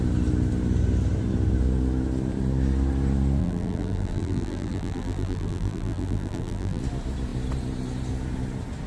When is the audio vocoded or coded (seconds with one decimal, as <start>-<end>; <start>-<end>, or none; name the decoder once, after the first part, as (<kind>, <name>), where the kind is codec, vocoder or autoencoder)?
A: 3.4-6.8 (vocoder, BigVGAN v2)